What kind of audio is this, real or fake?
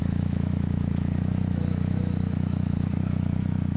fake